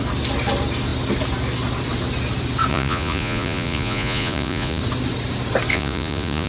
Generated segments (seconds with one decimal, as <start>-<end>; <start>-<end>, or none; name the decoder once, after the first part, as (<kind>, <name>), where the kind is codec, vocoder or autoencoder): 2.7-4.8 (vocoder, Vocos); 5.7-6.5